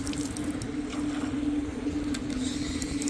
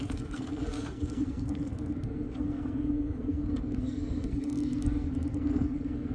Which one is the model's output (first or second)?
second